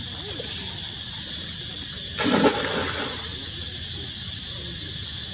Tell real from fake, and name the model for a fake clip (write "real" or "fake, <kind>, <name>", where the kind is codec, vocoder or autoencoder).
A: real